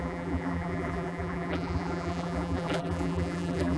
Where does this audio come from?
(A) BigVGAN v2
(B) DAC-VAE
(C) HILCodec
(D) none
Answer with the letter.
A